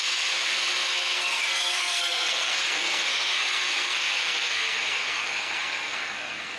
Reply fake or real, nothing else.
fake